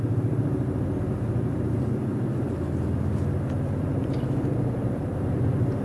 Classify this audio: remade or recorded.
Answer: remade